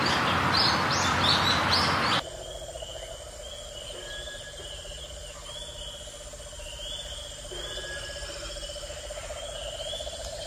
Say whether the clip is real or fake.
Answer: real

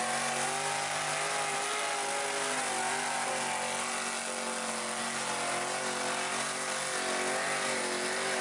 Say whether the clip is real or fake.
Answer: real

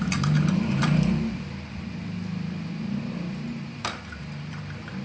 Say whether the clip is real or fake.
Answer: fake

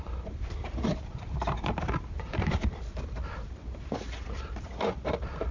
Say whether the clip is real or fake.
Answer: fake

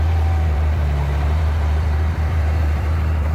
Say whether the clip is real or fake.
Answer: fake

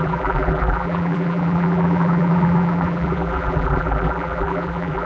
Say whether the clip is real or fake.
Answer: fake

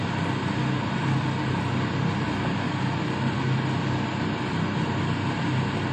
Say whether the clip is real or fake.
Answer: real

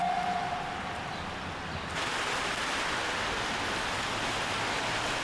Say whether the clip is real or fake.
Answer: real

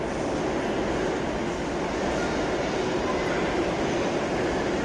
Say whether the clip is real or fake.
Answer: real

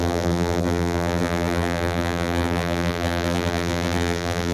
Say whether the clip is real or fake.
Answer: fake